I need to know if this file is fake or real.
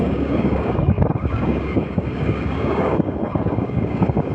fake